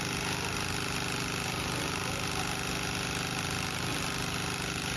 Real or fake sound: real